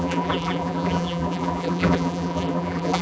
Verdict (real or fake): fake